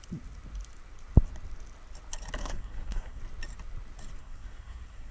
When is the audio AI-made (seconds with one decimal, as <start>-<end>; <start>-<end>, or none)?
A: 2.4-3.2; 4.2-5.1